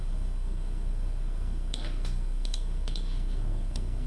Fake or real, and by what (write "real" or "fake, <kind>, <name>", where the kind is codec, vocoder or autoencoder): fake, codec, SNAC